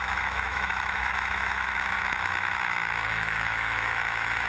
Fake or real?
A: fake